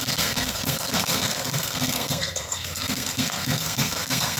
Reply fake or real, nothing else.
fake